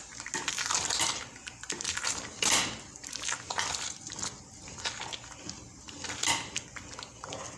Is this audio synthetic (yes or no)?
no